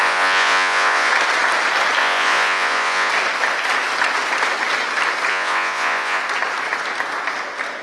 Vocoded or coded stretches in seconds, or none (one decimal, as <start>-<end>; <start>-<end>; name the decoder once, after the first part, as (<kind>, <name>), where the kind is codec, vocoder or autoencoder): 0.0-1.1 (vocoder, Vocos); 2.0-3.1; 5.3-6.2